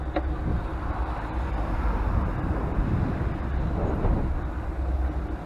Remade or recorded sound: remade